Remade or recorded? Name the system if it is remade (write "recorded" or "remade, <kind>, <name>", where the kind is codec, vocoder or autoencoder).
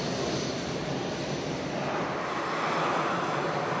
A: recorded